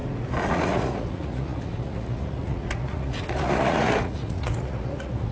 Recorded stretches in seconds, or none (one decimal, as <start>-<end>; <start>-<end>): 0.0-0.5